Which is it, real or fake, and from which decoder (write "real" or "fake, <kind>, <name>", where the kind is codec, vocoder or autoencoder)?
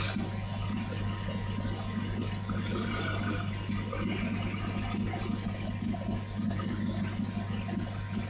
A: real